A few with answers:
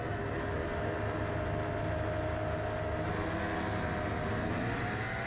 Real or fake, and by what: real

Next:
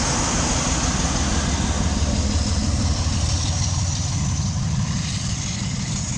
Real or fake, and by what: real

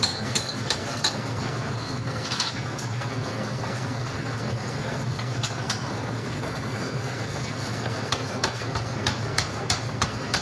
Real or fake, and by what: fake, codec, SNAC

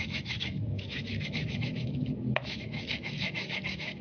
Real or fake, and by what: fake, autoencoder, DAC-VAE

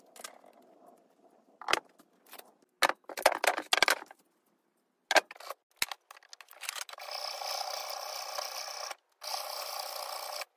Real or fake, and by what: real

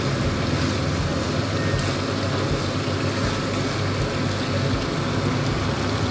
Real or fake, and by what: real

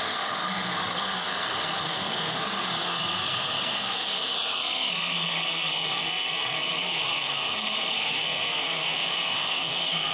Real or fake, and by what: fake, codec, SNAC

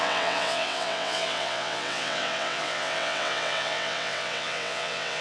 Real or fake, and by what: fake, vocoder, WaveNeXt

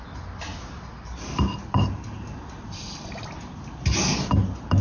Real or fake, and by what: real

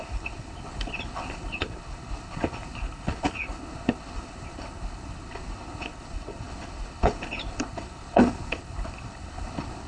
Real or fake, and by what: fake, codec, HILCodec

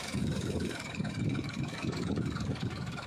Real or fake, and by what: fake, codec, DAC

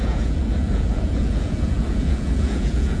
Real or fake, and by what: fake, vocoder, Vocos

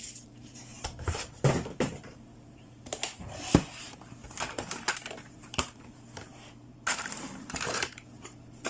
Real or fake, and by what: fake, vocoder, BigVGAN v2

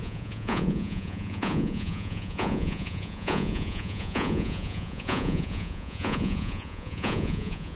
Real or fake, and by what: fake, vocoder, Vocos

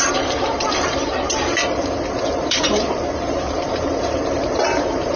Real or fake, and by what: fake, vocoder, BigVGAN v2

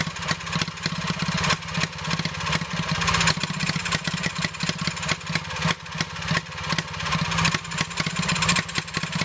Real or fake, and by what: real